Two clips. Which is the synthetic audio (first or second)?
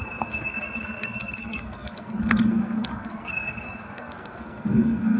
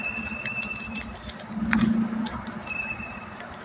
first